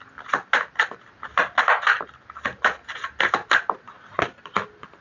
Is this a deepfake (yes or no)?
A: no